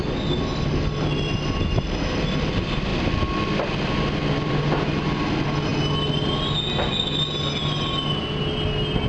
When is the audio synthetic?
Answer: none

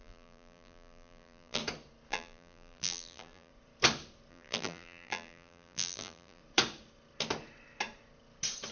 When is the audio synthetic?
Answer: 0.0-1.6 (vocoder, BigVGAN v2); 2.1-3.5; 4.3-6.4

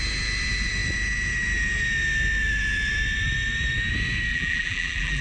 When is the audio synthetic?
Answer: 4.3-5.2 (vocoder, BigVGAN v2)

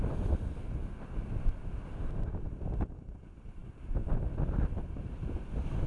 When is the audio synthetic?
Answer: 0.0-0.8 (vocoder, BigVGAN v2); 3.0-5.9

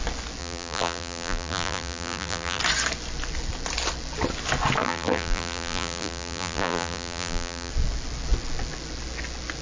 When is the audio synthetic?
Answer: 0.4-2.6 (vocoder, BigVGAN v2); 4.8-7.7